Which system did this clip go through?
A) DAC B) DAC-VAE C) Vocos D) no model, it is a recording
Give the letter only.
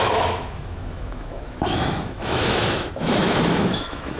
B